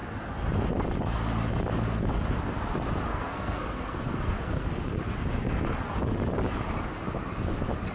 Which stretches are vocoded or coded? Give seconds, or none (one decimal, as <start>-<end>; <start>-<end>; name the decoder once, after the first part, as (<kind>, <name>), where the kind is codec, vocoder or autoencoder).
3.1-4.8 (codec, SNAC)